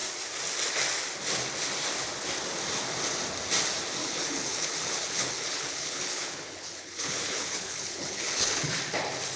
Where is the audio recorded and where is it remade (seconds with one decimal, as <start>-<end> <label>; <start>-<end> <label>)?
0.0-4.0 recorded; 4.0-8.7 remade; 8.7-9.4 recorded